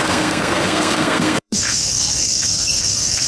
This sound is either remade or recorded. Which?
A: remade